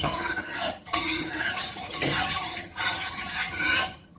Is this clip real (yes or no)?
no